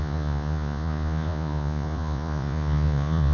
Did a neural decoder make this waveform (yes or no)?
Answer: yes